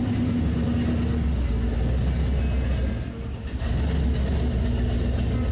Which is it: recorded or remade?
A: recorded